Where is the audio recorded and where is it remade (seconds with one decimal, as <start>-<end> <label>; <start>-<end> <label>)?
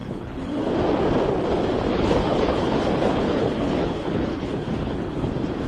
0.0-0.7 remade; 0.7-1.9 recorded; 1.9-5.3 remade; 5.3-5.7 recorded